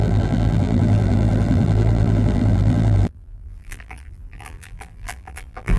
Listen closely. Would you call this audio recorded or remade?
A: remade